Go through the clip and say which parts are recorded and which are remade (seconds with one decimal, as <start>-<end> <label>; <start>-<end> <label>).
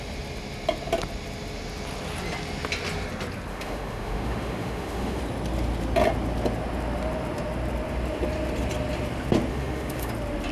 0.0-3.5 recorded; 3.5-5.2 remade; 5.2-9.5 recorded; 9.5-10.1 remade; 10.1-10.5 recorded